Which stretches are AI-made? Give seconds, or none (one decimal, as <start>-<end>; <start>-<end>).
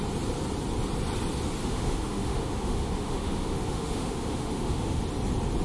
1.6-5.0